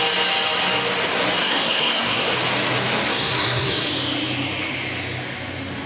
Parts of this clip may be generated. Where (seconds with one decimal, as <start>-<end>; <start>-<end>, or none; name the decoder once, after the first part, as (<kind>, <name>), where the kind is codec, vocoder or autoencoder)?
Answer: 1.4-2.3 (codec, SNAC); 3.1-3.9